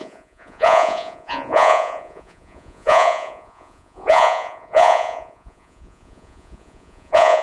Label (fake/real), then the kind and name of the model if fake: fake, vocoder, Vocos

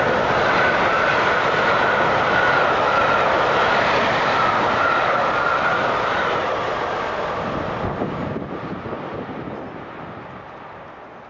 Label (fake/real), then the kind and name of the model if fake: real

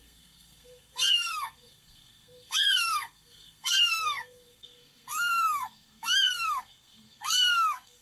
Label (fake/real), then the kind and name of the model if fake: fake, codec, SNAC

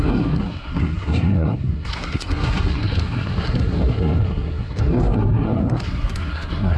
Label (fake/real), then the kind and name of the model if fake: fake, codec, SNAC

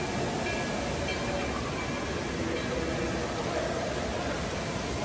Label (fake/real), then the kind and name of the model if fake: real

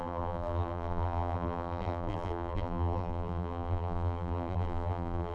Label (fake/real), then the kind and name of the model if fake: fake, vocoder, BigVGAN v2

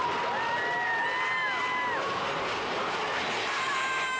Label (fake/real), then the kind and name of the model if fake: real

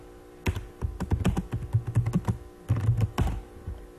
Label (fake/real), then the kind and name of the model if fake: real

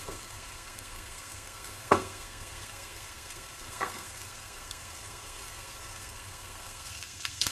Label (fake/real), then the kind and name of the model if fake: fake, codec, SNAC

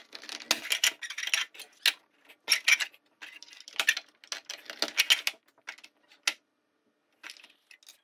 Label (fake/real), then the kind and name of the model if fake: real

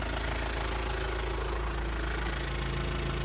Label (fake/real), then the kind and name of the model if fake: real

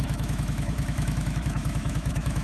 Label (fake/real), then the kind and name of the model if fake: fake, autoencoder, DAC-VAE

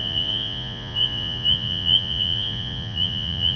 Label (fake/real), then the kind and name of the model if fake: fake, vocoder, Vocos